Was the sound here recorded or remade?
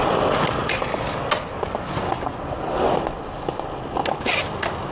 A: recorded